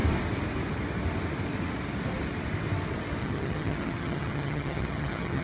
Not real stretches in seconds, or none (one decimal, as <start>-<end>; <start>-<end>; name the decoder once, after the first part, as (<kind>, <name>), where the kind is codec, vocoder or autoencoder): 3.2-5.4 (vocoder, HiFi-GAN)